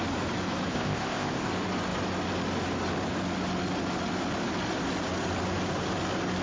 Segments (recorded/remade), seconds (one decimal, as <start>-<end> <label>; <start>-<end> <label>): 0.0-0.7 recorded; 0.7-1.5 remade; 1.5-6.4 recorded

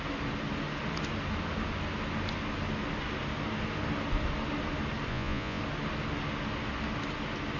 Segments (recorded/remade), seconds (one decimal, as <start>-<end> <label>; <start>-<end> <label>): 0.0-5.1 recorded; 5.1-5.6 remade; 5.6-7.6 recorded

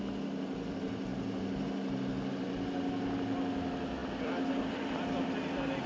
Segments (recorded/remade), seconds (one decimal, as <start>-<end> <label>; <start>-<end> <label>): 0.0-5.9 recorded

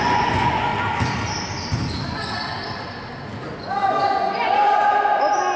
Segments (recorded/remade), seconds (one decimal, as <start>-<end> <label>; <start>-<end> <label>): 0.0-0.7 remade; 0.7-3.6 recorded; 3.6-4.9 remade; 4.9-5.6 recorded